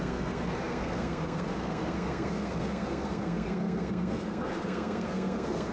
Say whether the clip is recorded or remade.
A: remade